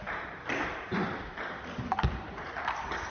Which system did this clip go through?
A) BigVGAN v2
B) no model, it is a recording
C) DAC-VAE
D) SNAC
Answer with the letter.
B